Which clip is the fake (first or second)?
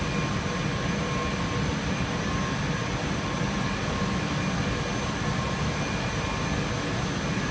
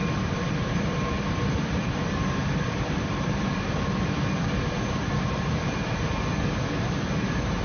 second